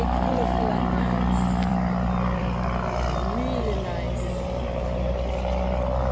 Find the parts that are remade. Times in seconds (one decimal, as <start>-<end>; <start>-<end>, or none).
none